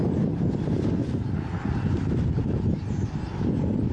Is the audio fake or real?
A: real